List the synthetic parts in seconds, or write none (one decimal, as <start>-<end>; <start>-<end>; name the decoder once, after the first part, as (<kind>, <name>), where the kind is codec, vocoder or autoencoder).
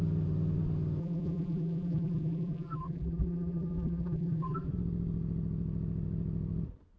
1.0-4.7 (vocoder, BigVGAN v2)